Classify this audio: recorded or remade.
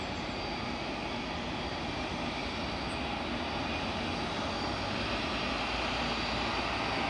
recorded